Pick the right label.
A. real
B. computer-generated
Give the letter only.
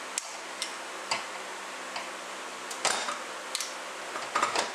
A